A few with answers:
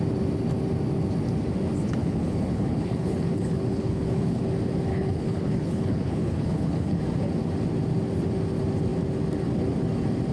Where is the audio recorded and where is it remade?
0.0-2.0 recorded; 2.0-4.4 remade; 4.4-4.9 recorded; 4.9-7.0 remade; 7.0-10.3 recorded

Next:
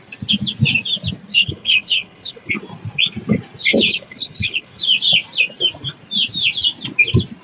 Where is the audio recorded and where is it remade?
0.0-1.3 recorded; 1.3-2.5 remade; 2.5-3.9 recorded; 3.9-4.8 remade; 4.8-7.4 recorded